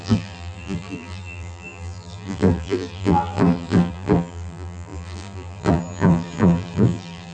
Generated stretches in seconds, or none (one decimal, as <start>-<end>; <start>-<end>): 0.0-7.3